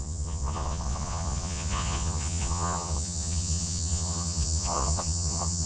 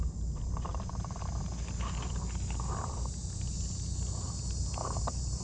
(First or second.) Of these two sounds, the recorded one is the second